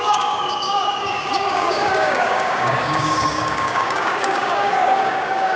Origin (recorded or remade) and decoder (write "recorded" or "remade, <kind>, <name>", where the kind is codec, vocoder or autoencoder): remade, codec, DAC